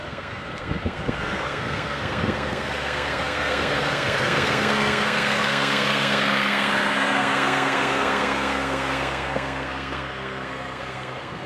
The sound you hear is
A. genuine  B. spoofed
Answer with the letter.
B